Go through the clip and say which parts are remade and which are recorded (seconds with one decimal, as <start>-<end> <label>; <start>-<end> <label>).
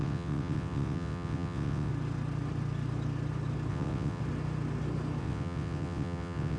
0.0-1.9 remade; 1.9-3.7 recorded; 3.7-4.2 remade; 4.2-5.2 recorded; 5.2-6.6 remade